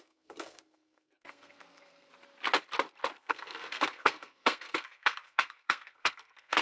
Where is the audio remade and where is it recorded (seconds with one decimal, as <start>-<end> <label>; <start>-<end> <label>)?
0.0-2.1 remade; 2.1-3.1 recorded; 3.1-6.6 remade